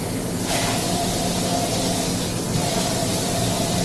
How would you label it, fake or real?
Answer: real